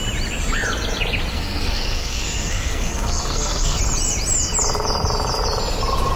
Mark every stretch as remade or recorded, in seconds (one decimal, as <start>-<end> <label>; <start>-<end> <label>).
0.0-1.3 recorded; 1.3-3.8 remade; 3.8-6.2 recorded